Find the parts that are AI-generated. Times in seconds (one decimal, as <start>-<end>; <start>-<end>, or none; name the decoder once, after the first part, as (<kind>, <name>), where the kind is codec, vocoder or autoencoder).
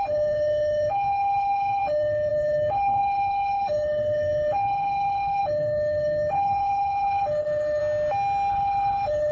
0.0-7.8 (codec, HILCodec); 8.5-9.3